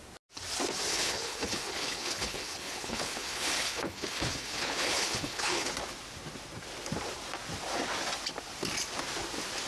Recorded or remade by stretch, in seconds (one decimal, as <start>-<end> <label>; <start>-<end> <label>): 0.0-0.9 recorded; 0.9-5.7 remade; 5.7-9.7 recorded